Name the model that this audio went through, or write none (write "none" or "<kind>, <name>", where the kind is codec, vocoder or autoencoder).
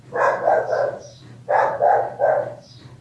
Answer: none